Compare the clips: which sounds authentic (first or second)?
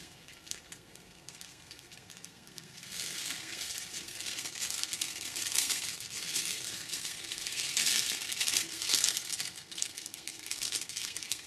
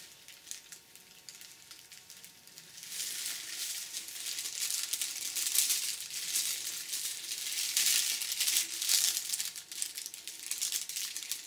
second